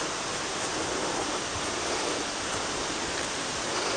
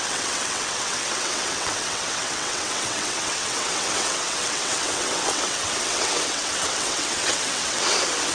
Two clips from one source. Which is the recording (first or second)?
first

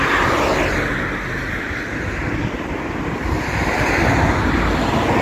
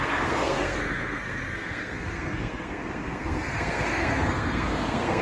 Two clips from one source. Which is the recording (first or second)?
first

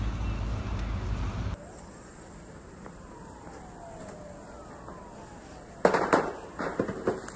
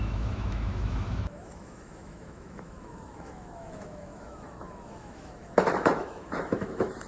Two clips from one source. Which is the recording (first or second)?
first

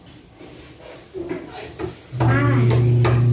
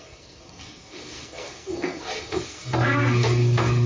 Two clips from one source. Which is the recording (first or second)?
first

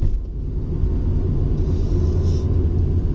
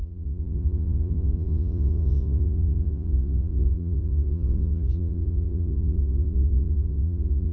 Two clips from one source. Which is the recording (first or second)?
first